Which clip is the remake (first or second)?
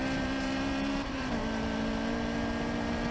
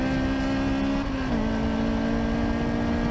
first